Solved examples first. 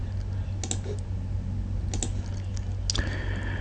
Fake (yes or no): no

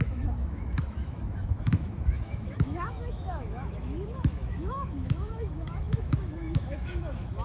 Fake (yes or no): yes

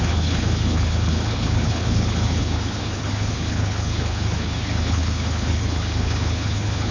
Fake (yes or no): yes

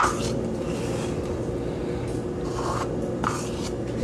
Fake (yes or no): no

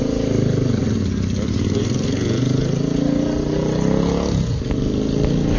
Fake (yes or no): no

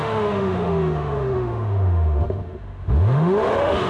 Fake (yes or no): yes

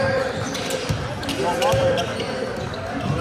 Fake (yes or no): yes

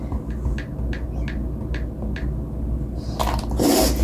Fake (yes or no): no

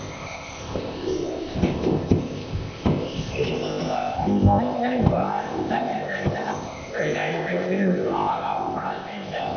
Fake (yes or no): yes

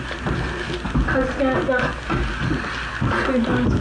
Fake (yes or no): no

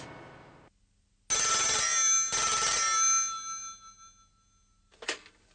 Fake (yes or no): no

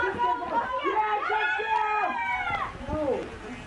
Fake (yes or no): no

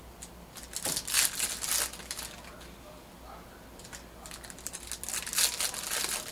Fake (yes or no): no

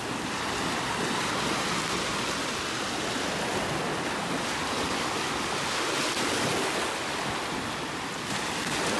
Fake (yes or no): no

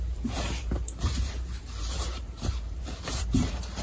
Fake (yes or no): yes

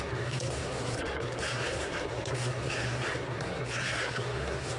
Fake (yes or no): yes